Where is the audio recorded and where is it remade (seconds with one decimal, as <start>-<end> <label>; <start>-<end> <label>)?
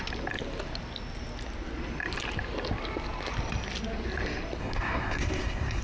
0.0-4.6 recorded; 4.6-5.8 remade